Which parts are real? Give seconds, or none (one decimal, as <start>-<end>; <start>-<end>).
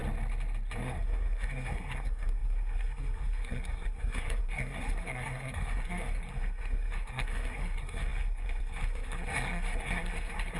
0.0-0.8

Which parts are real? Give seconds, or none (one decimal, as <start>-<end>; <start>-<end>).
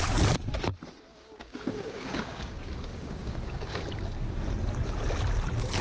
0.0-1.1; 3.8-5.8